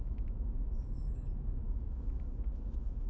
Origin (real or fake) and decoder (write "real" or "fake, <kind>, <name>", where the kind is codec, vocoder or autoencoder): fake, autoencoder, DAC-VAE